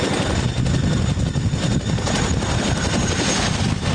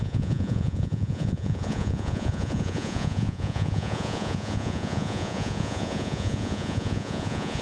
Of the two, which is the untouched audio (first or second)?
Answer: first